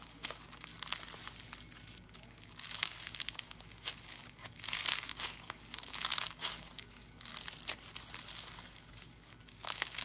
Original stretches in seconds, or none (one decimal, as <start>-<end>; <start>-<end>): 0.7-2.0; 7.3-8.6